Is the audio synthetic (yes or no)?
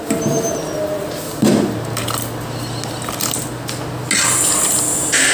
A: no